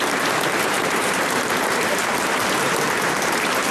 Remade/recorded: remade